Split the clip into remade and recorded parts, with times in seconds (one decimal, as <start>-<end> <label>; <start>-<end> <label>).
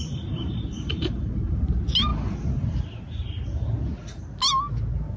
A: 0.0-1.6 remade; 1.6-5.2 recorded